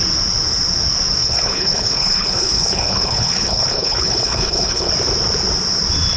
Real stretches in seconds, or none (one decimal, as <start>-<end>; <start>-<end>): 0.0-1.2; 4.9-6.2